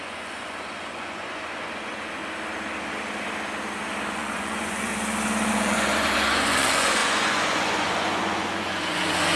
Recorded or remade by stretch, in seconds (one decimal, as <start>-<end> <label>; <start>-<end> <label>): 0.0-2.2 remade; 2.2-4.1 recorded; 4.1-4.9 remade; 4.9-5.5 recorded; 5.5-9.4 remade